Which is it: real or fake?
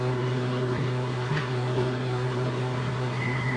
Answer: fake